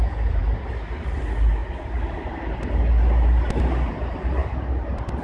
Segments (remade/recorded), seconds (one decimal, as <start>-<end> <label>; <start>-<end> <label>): 0.0-5.2 recorded